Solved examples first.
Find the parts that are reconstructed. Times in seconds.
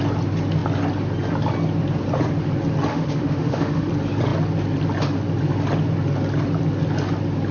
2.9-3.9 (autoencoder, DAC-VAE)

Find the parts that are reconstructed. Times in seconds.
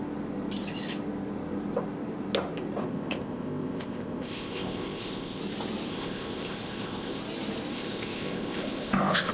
2.8-5.4 (codec, ZipCodec); 5.9-7.2; 7.7-9.3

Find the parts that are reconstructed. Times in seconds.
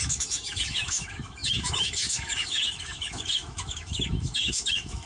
0.0-5.1 (autoencoder, DAC-VAE)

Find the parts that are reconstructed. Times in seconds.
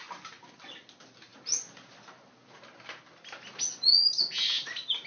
none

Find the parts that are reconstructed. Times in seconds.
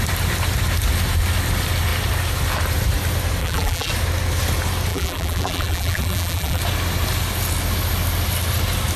3.4-3.9 (vocoder, BigVGAN v2); 4.9-6.6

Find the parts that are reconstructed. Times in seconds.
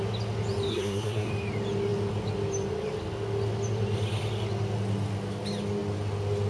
0.7-1.3 (codec, SNAC)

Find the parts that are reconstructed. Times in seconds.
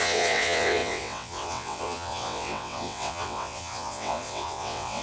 0.0-5.0 (vocoder, WaveNeXt)